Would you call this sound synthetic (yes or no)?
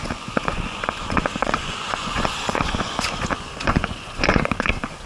yes